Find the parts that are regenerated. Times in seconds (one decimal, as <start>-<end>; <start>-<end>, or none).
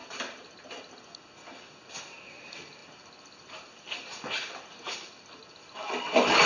none